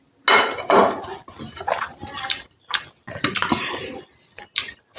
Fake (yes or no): no